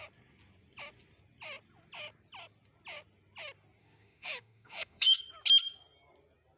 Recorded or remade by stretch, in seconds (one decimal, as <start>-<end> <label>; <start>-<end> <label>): 0.0-3.8 recorded; 3.8-5.2 remade; 5.2-6.6 recorded